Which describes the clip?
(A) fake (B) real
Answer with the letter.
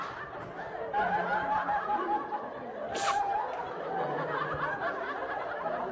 B